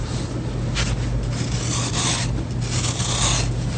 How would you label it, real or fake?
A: real